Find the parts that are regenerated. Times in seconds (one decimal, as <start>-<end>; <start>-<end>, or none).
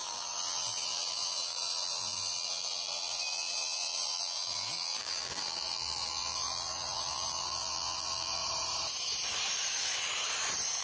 0.0-8.4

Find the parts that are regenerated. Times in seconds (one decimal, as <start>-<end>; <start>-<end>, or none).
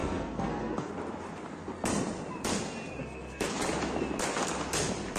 0.0-0.9; 3.0-3.6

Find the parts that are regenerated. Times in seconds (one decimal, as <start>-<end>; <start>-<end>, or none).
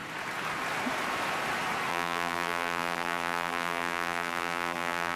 1.9-5.2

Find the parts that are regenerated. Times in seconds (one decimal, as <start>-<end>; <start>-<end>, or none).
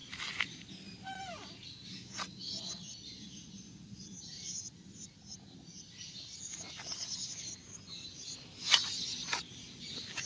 none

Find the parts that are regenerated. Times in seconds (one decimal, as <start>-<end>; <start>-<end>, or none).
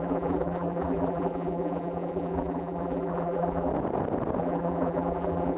0.0-3.7; 4.4-5.6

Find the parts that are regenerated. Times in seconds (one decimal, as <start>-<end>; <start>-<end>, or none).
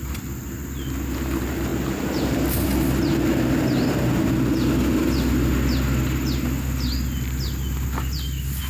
none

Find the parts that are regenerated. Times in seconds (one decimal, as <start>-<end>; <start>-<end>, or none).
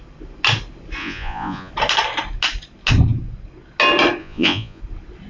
1.0-1.7; 4.2-4.8